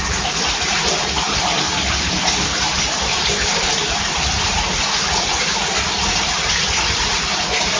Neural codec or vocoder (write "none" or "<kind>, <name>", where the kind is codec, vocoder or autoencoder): none